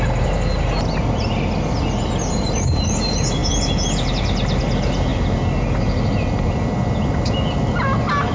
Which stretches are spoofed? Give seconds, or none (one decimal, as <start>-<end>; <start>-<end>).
none